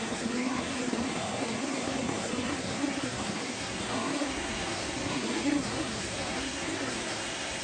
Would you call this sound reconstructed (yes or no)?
yes